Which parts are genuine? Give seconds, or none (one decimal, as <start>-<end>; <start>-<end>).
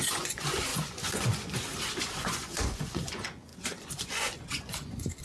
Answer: none